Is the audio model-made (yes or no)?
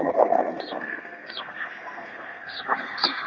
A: yes